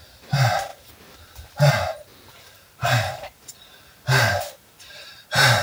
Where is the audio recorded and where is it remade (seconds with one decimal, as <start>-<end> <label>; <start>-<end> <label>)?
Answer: 0.0-0.7 recorded; 0.7-1.7 remade; 1.7-2.1 recorded; 2.1-5.1 remade; 5.1-5.6 recorded